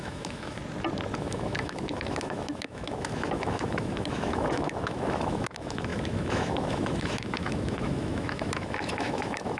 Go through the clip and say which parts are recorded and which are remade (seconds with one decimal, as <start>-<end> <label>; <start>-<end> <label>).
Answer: 0.0-0.6 remade; 0.6-1.2 recorded; 1.2-9.6 remade